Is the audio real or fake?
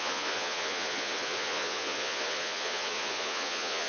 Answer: fake